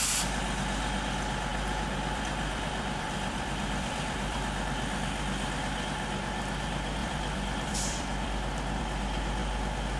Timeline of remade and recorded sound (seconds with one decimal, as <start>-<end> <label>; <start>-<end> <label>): 0.0-1.5 recorded; 1.5-4.6 remade; 4.6-7.0 recorded; 7.0-8.8 remade; 8.8-10.0 recorded